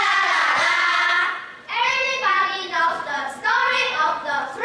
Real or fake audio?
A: fake